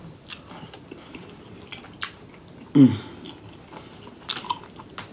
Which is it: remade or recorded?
recorded